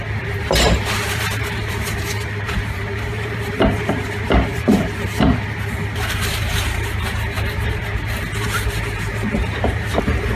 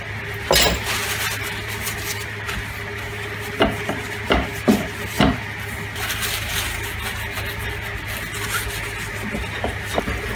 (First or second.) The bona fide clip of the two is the second